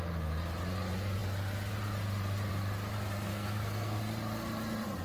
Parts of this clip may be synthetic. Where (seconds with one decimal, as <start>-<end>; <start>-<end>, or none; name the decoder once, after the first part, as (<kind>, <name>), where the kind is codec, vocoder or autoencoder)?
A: 3.3-4.0 (codec, SNAC)